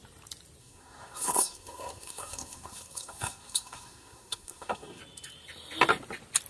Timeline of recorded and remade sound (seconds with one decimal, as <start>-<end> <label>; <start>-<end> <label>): 0.0-0.6 recorded; 0.6-5.0 remade; 5.0-6.5 recorded